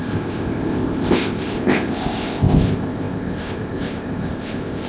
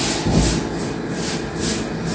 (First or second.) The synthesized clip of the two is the first